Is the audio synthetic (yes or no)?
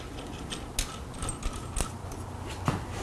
no